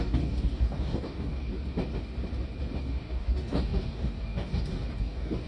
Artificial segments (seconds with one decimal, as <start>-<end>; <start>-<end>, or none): 0.0-1.5; 2.8-5.5